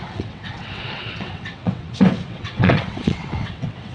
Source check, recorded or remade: remade